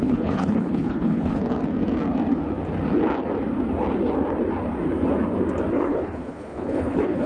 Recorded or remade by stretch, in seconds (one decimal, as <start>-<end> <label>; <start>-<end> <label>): 0.0-1.4 remade; 1.4-5.7 recorded; 5.7-7.3 remade